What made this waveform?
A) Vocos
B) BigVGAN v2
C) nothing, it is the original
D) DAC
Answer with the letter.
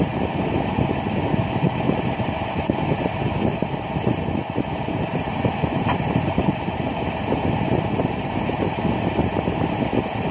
C